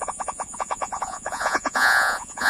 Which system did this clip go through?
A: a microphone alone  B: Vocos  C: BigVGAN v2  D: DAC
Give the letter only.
B